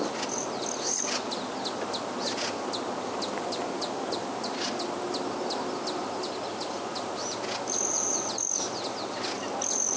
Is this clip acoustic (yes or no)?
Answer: yes